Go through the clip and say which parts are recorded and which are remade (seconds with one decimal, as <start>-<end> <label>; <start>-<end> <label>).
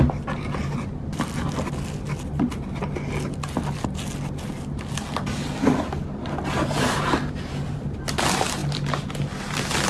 0.0-9.9 recorded